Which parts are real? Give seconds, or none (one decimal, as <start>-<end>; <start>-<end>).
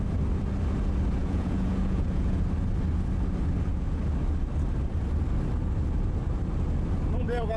0.0-1.2; 2.4-7.6